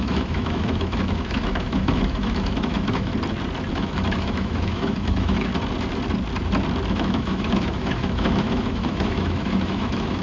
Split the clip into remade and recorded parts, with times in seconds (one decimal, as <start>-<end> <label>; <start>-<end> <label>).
0.0-3.1 remade; 3.1-3.7 recorded; 3.7-5.5 remade; 5.5-6.9 recorded; 6.9-10.2 remade